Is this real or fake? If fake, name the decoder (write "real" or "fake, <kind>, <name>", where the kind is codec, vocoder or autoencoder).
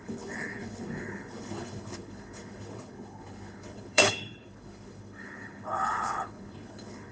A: fake, codec, HILCodec